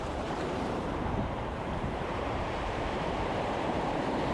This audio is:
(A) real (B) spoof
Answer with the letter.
B